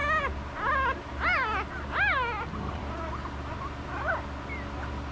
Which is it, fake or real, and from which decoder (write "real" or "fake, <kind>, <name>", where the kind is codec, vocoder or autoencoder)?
real